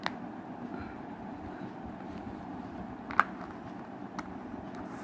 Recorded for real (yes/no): yes